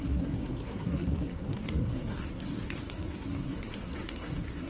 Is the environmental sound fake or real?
fake